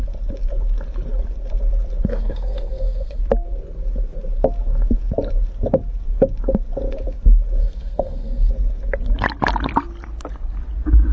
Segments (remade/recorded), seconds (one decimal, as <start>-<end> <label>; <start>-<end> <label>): 0.0-2.1 recorded; 2.1-3.2 remade; 3.2-7.6 recorded; 7.6-8.5 remade; 8.5-11.1 recorded